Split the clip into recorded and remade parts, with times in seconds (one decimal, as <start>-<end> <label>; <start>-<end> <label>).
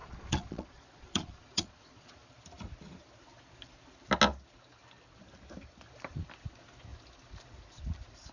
0.0-2.3 remade; 2.3-8.3 recorded